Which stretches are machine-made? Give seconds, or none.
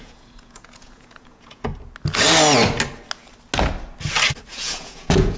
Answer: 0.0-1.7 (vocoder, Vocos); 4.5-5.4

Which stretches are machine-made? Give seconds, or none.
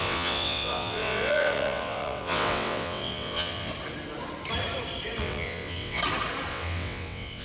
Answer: 0.0-3.7 (vocoder, WaveNeXt); 5.2-6.0; 6.5-7.4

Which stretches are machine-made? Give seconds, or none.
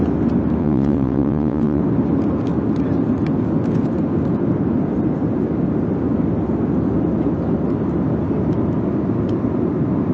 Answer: 0.6-1.8 (vocoder, WaveNeXt)